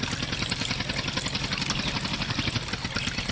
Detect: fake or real real